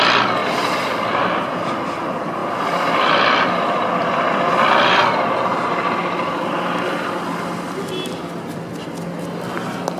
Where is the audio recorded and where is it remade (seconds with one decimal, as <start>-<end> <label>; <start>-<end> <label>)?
0.0-0.4 recorded; 0.4-0.9 remade; 0.9-6.0 recorded; 6.0-8.4 remade; 8.4-10.0 recorded